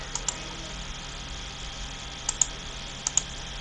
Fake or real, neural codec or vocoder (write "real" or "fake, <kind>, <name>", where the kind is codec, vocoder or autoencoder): real